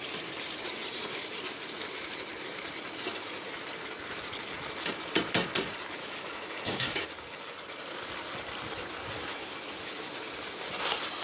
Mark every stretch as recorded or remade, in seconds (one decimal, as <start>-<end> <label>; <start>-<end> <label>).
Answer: 0.0-6.0 recorded; 6.0-7.1 remade; 7.1-9.3 recorded; 9.3-10.1 remade; 10.1-11.2 recorded